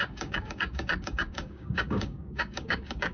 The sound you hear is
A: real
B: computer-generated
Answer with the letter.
B